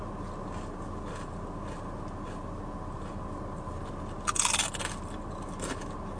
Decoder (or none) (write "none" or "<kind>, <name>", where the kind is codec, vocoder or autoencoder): none